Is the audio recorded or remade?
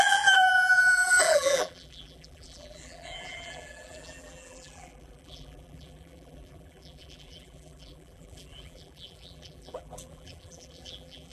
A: remade